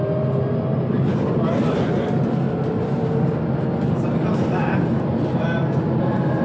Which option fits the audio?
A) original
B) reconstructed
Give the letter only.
A